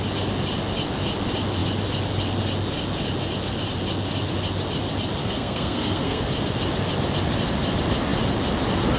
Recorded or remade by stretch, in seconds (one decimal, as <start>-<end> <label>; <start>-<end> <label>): 0.0-5.2 recorded; 5.2-6.2 remade; 6.2-9.0 recorded